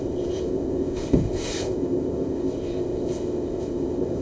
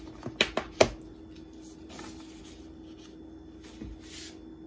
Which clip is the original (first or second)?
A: second